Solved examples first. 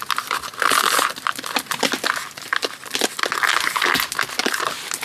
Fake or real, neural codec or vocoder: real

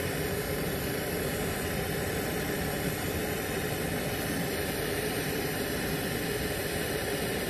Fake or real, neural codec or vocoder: real